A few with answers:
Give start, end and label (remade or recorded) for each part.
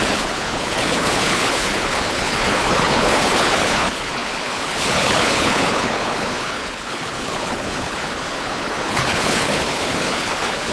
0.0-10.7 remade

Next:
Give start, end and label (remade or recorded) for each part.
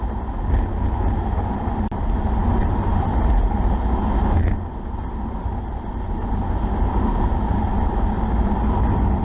0.0-9.2 recorded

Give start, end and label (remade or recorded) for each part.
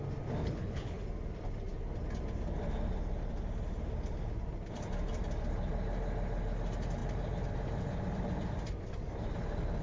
0.0-0.4 recorded; 0.4-1.0 remade; 1.0-9.8 recorded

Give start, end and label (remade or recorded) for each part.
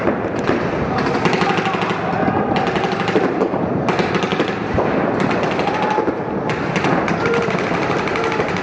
0.0-8.6 recorded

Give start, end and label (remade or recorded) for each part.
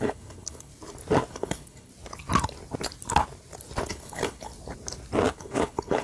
0.0-0.7 remade; 0.7-1.3 recorded; 1.3-1.9 remade; 1.9-3.9 recorded; 3.9-4.5 remade; 4.5-5.3 recorded; 5.3-6.0 remade